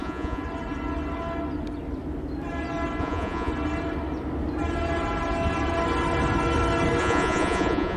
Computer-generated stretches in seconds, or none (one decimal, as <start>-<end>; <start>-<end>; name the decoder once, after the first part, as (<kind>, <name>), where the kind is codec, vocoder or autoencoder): 0.0-0.4 (vocoder, Vocos); 3.0-3.5; 7.0-8.0